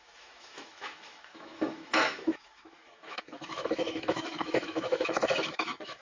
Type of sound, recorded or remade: remade